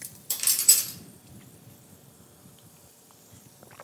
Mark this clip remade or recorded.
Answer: remade